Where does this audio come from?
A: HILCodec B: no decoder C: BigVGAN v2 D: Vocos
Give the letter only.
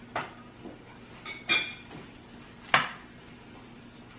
B